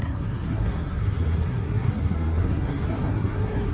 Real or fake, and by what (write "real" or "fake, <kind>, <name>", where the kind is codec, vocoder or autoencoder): fake, codec, SNAC